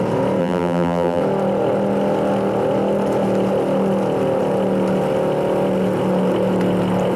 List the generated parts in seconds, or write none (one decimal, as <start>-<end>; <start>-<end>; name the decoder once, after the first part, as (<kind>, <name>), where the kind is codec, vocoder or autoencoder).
0.4-1.2 (vocoder, BigVGAN v2)